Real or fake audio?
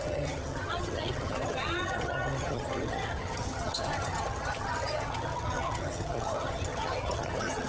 fake